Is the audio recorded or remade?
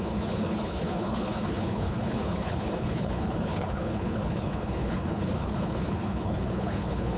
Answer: remade